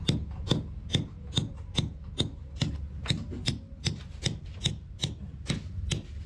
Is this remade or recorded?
recorded